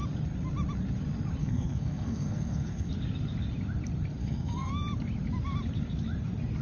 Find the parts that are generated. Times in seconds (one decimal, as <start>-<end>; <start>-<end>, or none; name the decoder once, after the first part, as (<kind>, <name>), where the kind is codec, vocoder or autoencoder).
1.4-2.9 (codec, SNAC); 4.2-4.7